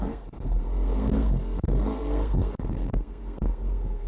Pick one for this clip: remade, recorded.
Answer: remade